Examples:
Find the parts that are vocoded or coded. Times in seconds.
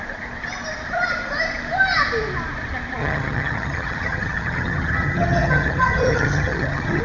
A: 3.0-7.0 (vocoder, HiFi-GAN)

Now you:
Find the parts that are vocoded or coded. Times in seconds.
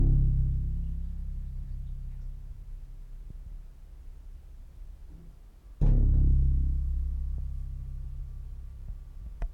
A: none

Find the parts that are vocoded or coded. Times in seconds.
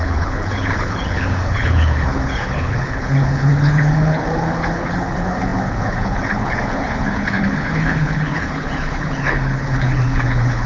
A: 0.0-10.7 (codec, HILCodec)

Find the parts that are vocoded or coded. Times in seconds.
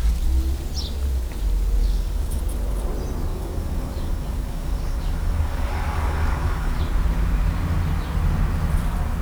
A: 1.8-2.4 (codec, DAC); 3.3-6.8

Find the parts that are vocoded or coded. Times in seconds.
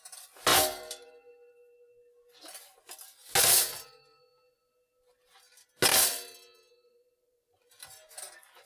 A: none